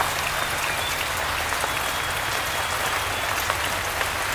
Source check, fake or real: real